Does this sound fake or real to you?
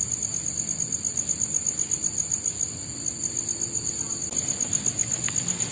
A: real